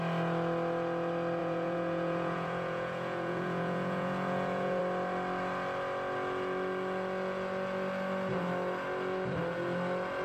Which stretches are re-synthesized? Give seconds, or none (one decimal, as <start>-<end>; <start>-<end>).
1.4-4.8